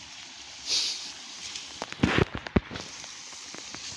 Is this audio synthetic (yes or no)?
no